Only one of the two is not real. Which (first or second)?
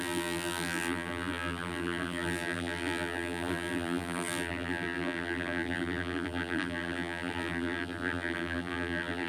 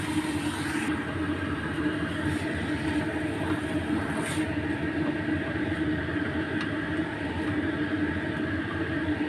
first